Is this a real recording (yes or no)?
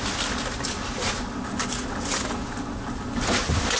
yes